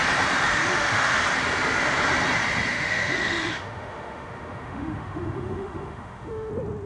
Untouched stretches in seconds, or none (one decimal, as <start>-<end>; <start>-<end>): 0.0-0.5; 1.1-2.7; 6.5-6.9